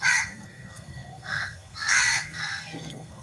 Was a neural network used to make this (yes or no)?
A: yes